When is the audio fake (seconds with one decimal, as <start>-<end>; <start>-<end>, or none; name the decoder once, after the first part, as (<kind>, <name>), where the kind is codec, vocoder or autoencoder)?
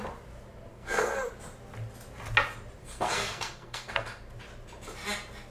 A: 0.7-1.3 (codec, SNAC); 2.8-4.2